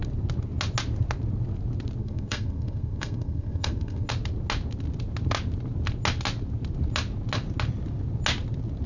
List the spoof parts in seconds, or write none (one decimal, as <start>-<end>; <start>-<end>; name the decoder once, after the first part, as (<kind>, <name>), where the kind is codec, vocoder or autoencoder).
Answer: 2.0-4.1 (codec, SNAC)